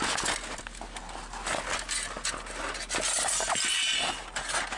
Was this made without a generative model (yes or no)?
yes